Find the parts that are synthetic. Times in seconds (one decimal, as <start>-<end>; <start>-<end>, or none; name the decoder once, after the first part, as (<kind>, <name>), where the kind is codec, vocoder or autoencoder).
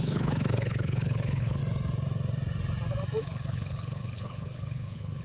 0.0-1.6 (codec, HILCodec); 3.2-5.2